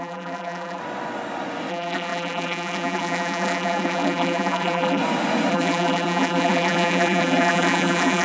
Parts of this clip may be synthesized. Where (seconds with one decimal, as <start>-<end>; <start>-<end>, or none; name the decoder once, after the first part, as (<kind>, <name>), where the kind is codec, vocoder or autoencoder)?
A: 0.0-0.8 (vocoder, BigVGAN v2); 1.7-5.0; 5.5-8.2